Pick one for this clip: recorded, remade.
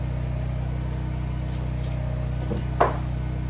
recorded